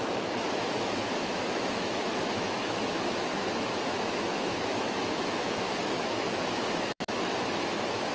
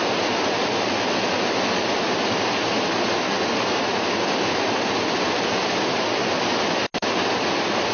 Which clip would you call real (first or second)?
second